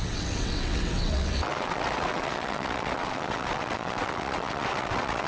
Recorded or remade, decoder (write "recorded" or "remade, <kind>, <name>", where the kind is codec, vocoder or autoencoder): remade, vocoder, WaveNeXt